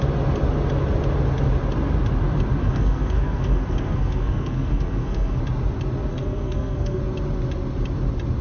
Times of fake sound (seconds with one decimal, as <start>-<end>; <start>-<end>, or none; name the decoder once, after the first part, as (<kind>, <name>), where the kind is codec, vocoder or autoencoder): 2.6-5.4 (codec, SNAC); 6.1-7.0